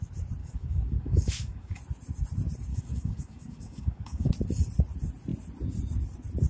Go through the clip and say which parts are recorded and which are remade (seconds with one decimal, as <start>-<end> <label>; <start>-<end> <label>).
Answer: 0.0-0.4 recorded; 0.4-1.8 remade; 1.8-2.7 recorded; 2.7-4.3 remade; 4.3-6.5 recorded